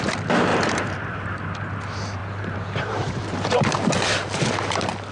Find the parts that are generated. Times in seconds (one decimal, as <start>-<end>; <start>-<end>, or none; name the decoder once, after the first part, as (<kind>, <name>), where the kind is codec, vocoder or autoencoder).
0.5-1.3 (vocoder, BigVGAN v2); 2.2-3.5